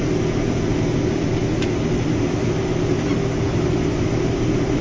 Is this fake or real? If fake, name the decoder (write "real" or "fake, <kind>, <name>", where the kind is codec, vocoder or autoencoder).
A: real